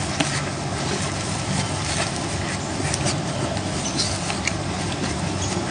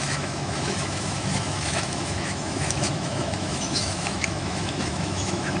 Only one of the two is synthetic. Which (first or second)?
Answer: second